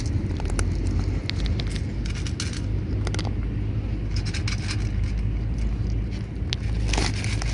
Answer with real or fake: real